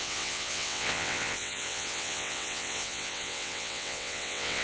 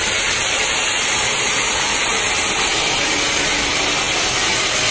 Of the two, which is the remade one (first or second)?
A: first